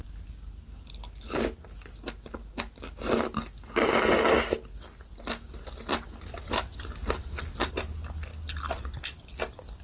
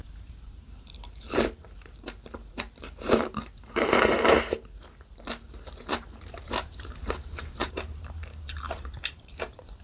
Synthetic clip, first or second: second